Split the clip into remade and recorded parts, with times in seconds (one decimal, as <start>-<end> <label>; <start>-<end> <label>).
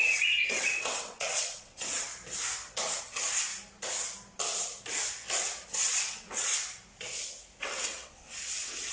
0.0-2.1 remade; 2.1-3.0 recorded; 3.0-3.5 remade; 3.5-5.7 recorded; 5.7-6.5 remade; 6.5-7.6 recorded; 7.6-8.9 remade